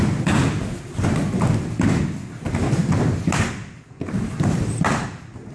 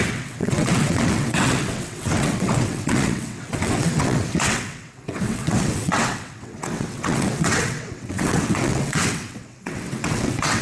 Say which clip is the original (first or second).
first